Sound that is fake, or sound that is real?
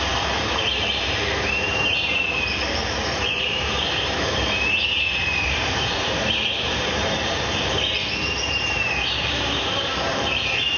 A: fake